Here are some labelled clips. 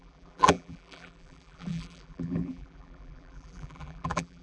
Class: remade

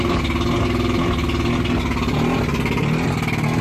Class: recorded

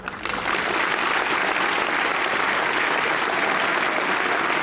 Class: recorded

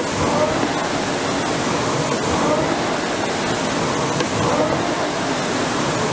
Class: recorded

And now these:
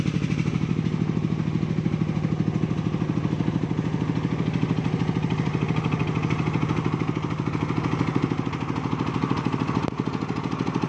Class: recorded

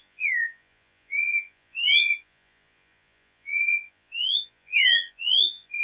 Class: remade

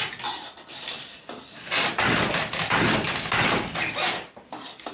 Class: recorded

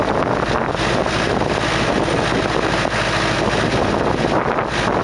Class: recorded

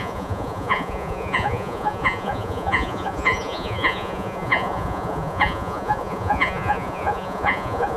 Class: remade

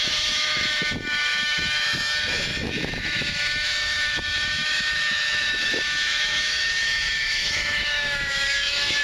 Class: remade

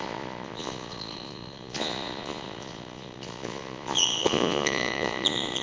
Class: remade